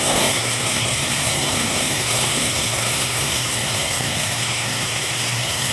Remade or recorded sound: remade